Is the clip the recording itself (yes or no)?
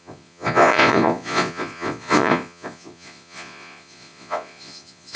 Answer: no